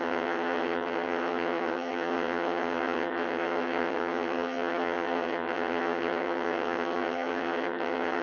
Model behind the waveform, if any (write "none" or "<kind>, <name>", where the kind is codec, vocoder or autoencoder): vocoder, HiFi-GAN